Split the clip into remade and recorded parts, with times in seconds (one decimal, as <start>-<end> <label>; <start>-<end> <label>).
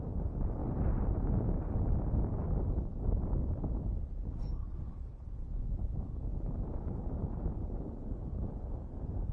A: 0.0-0.6 recorded; 0.6-1.3 remade; 1.3-5.1 recorded; 5.1-5.6 remade; 5.6-9.3 recorded